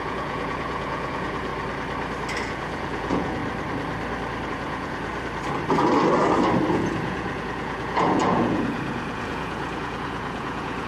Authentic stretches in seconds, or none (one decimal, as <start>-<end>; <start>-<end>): 1.5-2.4; 3.4-4.5; 5.1-6.7